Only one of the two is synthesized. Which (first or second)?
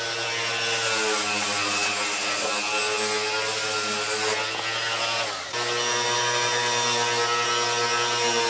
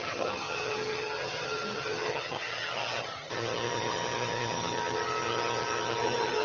second